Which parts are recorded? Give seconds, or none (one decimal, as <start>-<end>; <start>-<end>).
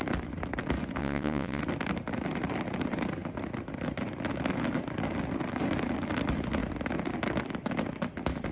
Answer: 0.0-1.0; 1.6-8.5